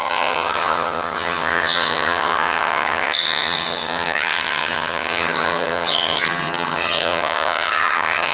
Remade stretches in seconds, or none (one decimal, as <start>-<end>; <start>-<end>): 0.0-8.3